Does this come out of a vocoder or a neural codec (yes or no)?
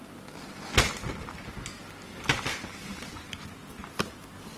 no